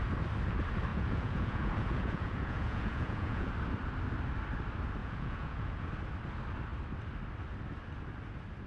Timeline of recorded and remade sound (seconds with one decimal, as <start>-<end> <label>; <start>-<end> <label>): 0.0-0.9 recorded; 0.9-3.5 remade; 3.5-5.0 recorded; 5.0-5.9 remade; 5.9-8.7 recorded